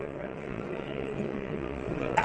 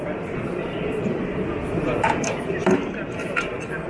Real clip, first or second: second